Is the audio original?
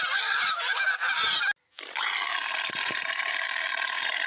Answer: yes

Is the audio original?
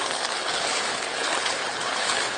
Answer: no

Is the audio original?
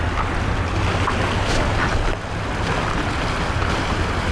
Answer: yes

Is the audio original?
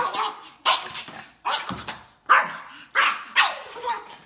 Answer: yes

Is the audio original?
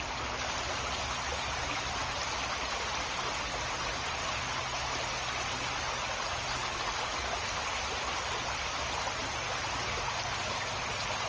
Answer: yes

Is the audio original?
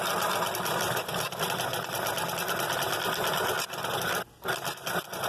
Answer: yes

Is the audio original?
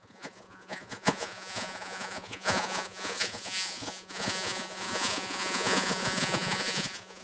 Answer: no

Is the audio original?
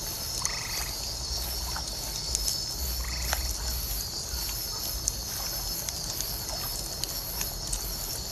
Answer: yes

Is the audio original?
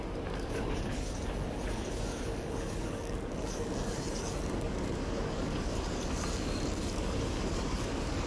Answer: no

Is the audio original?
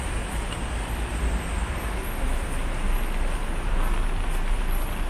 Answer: yes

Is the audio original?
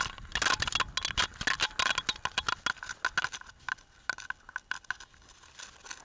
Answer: yes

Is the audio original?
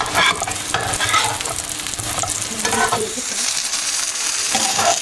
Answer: no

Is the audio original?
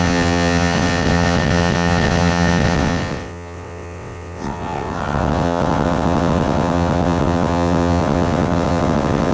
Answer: no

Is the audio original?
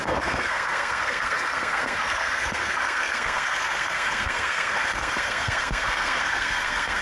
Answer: no